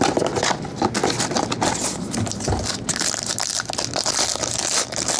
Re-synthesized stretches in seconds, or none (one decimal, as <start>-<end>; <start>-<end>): none